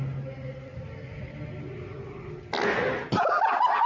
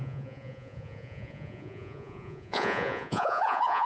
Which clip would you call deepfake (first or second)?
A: second